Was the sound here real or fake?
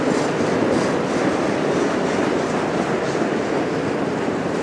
real